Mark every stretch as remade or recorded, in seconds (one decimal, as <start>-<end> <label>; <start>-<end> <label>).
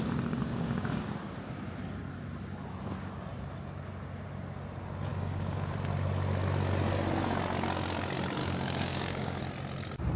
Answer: 0.0-0.4 recorded; 0.4-1.2 remade; 1.2-5.1 recorded; 5.1-5.7 remade; 5.7-8.4 recorded; 8.4-9.4 remade; 9.4-10.2 recorded